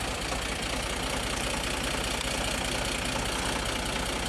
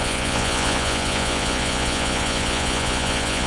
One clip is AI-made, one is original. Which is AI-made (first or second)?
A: second